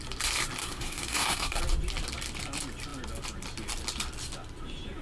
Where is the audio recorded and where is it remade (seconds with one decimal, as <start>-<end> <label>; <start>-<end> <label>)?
0.0-0.6 recorded; 0.6-1.6 remade; 1.6-5.0 recorded